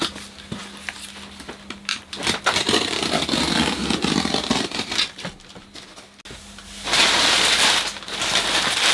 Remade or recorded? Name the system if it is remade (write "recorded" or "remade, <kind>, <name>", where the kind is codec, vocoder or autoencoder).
recorded